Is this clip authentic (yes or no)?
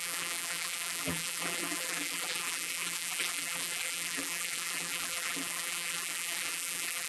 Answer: no